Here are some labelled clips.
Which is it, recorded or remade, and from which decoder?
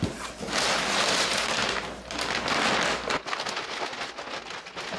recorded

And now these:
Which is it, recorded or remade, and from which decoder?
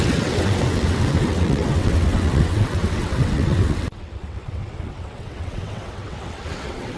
remade, vocoder, WaveNeXt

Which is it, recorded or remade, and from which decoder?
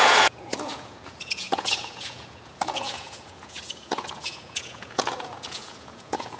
remade, vocoder, Vocos